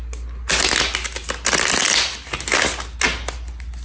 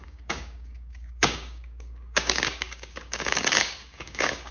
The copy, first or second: second